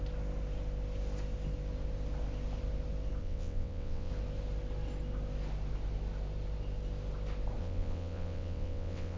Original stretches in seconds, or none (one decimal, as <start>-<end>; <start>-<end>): 0.0-3.2; 4.1-7.6